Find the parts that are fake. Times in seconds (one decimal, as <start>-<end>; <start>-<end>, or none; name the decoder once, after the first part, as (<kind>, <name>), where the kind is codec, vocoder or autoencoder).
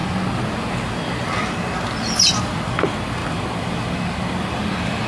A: none